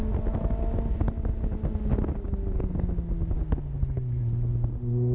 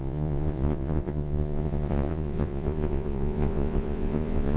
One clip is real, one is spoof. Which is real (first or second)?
first